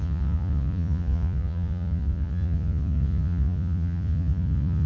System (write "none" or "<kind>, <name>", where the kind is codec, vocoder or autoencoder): vocoder, Vocos